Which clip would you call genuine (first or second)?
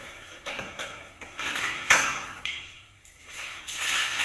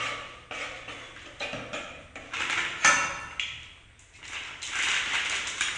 second